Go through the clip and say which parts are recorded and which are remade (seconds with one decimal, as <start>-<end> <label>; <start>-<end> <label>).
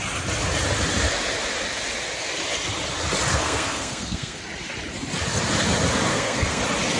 0.0-3.3 recorded; 3.3-4.4 remade; 4.4-6.1 recorded; 6.1-6.6 remade; 6.6-7.0 recorded